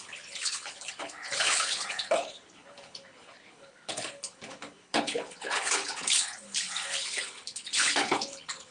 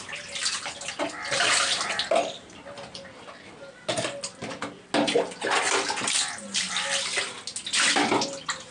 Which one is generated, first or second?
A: first